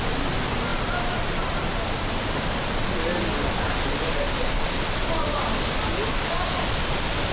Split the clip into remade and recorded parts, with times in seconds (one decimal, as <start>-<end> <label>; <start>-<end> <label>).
0.0-7.3 recorded